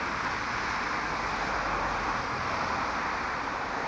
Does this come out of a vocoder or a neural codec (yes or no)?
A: no